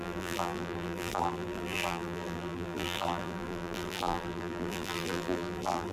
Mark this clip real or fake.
fake